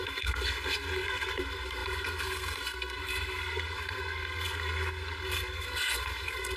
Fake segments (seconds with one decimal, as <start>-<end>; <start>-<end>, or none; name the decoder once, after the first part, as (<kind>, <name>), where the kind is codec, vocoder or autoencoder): 0.0-6.6 (codec, SNAC)